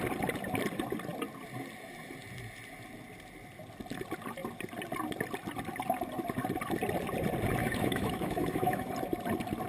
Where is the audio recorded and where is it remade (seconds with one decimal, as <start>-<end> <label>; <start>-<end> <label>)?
0.0-7.6 recorded; 7.6-8.9 remade; 8.9-9.7 recorded